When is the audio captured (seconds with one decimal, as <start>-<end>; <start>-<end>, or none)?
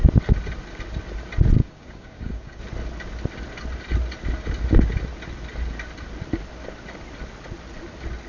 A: 0.0-1.6; 2.6-8.3